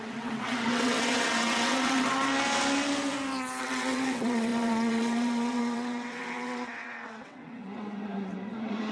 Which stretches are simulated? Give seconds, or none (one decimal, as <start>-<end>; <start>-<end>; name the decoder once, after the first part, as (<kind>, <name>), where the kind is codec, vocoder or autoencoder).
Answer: 0.0-2.3 (vocoder, WaveNeXt); 3.6-8.9